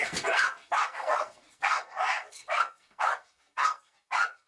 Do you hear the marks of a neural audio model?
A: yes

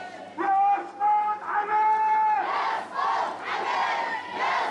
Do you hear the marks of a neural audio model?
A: no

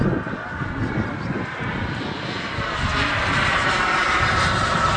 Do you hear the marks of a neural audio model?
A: no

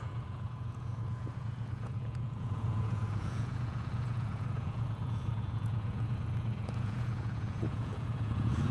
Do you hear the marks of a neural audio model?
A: yes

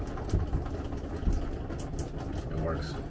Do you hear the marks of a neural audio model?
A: no